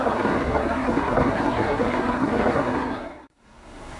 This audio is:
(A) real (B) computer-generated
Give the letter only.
B